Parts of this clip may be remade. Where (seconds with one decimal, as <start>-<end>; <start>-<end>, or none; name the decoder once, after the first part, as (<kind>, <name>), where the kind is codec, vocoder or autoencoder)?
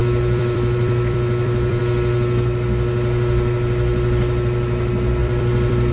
0.0-1.8 (vocoder, BigVGAN v2); 5.2-5.9